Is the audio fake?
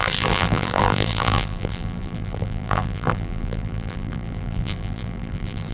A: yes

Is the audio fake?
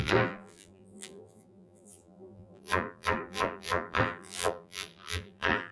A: yes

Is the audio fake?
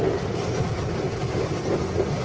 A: no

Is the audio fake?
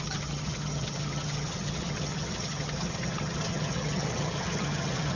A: yes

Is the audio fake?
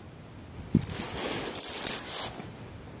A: no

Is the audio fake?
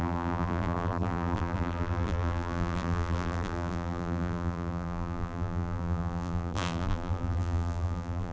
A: yes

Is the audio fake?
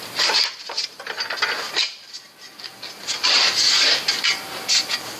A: no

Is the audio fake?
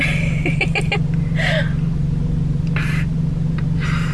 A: no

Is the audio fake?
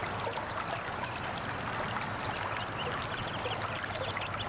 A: no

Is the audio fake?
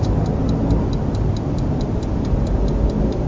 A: no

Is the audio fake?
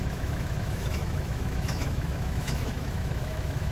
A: yes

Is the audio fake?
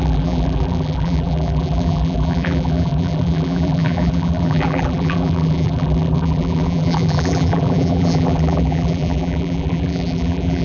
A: yes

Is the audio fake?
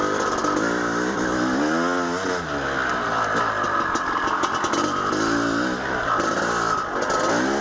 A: no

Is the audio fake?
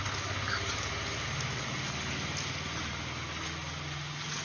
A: no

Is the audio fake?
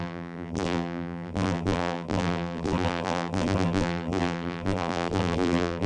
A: yes